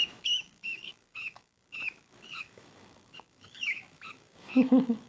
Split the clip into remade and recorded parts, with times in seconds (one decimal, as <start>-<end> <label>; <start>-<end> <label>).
0.0-5.1 remade